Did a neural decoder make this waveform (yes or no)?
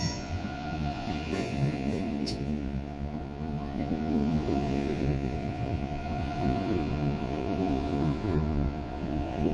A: yes